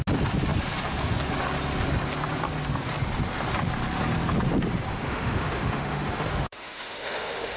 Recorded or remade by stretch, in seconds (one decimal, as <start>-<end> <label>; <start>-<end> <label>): 0.0-4.9 recorded; 4.9-7.6 remade